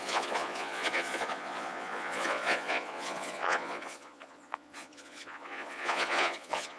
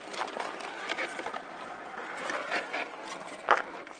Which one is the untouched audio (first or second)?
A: second